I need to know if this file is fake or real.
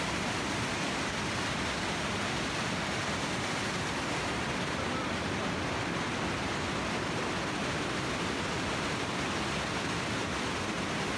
real